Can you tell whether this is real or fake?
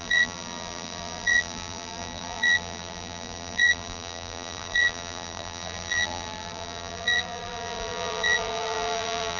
fake